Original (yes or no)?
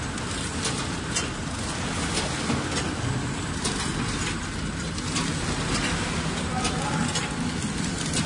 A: yes